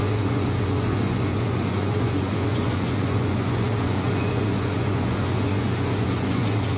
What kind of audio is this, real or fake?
fake